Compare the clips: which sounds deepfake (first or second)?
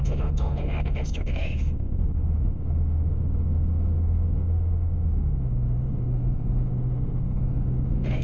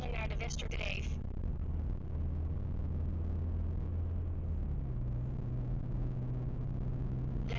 first